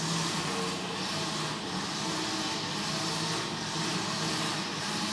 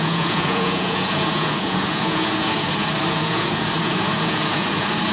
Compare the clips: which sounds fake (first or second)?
second